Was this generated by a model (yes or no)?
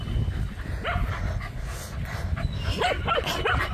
no